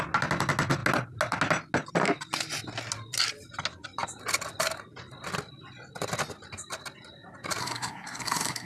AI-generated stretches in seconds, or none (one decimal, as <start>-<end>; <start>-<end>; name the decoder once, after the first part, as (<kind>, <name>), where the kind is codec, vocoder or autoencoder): 7.6-8.7 (codec, SNAC)